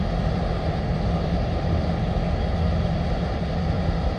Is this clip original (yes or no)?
no